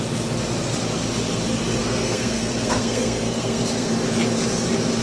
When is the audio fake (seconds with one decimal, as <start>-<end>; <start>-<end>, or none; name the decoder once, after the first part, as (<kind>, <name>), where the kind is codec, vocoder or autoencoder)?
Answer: 1.8-3.9 (codec, SNAC)